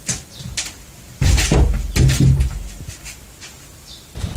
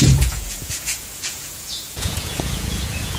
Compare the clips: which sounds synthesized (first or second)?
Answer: second